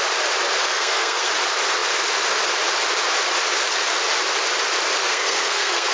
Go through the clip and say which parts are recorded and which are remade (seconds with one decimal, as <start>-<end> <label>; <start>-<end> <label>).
0.0-0.6 recorded; 0.6-1.3 remade; 1.3-5.0 recorded; 5.0-5.9 remade